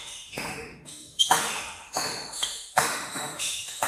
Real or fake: fake